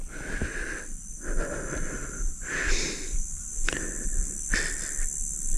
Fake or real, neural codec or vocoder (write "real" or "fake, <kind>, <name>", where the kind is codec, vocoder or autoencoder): fake, vocoder, BigVGAN v2